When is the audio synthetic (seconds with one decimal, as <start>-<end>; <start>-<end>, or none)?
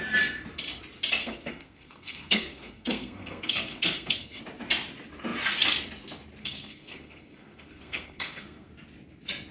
1.2-4.4; 6.4-8.7